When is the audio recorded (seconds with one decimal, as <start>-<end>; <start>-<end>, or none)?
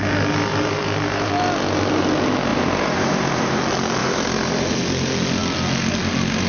0.0-0.5; 1.3-2.5; 3.6-4.0; 4.7-6.5